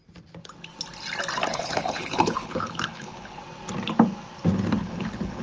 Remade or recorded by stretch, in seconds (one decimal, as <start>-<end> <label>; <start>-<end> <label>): 0.0-1.5 recorded; 1.5-3.4 remade; 3.4-4.8 recorded; 4.8-5.4 remade